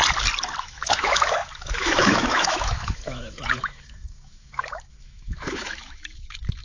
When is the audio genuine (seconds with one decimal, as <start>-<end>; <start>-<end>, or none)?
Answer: 0.0-0.6